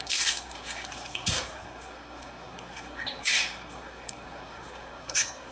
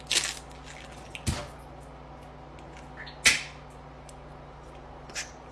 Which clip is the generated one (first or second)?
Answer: first